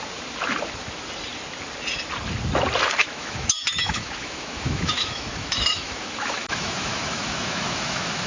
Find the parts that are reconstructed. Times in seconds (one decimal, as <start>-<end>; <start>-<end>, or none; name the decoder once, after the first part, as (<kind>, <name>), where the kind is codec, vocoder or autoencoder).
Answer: 3.0-8.3 (autoencoder, DAC-VAE)